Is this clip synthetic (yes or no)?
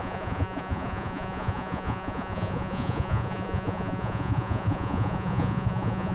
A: yes